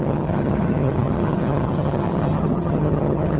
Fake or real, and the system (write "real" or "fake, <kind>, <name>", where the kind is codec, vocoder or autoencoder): fake, vocoder, HiFi-GAN